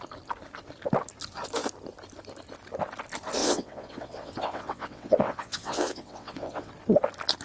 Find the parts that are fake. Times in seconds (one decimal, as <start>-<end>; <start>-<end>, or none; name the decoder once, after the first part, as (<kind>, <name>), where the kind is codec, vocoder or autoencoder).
3.4-6.7 (vocoder, WaveNeXt)